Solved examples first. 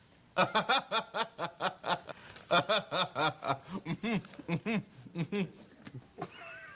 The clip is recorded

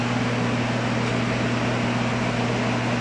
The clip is recorded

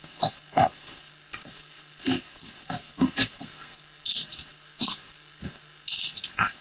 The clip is remade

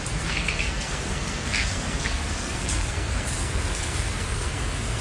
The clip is remade